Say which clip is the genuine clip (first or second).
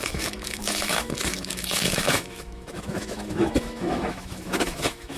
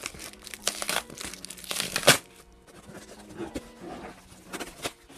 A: second